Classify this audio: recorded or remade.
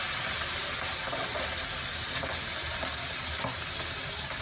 recorded